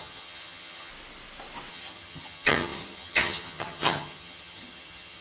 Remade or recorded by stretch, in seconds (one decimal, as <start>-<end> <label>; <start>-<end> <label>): 0.0-0.9 remade; 0.9-1.7 recorded; 1.7-5.2 remade